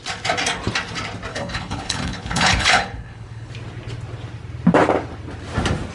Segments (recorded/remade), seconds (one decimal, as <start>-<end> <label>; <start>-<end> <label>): 0.0-1.3 recorded; 1.3-3.5 remade; 3.5-5.9 recorded